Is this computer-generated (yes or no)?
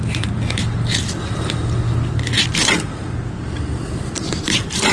no